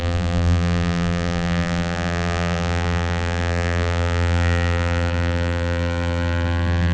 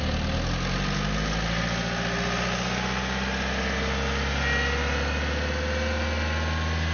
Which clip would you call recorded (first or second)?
second